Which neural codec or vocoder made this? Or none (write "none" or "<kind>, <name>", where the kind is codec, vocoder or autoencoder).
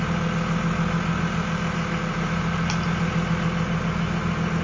none